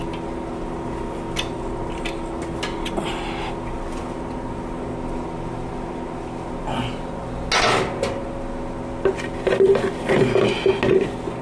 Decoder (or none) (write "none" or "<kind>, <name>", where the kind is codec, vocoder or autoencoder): none